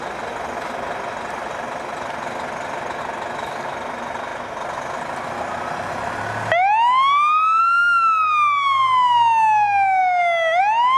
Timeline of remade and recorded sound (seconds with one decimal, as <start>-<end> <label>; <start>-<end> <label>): 0.0-11.0 recorded